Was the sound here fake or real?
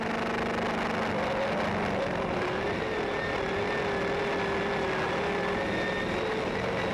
real